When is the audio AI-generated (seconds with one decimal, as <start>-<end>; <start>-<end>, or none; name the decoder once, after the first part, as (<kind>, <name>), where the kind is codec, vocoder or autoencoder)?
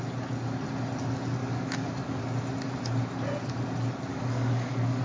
1.4-2.2 (codec, DAC); 4.1-5.0